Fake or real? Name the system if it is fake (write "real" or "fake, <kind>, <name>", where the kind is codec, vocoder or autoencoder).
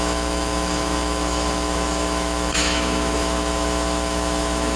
fake, autoencoder, DAC-VAE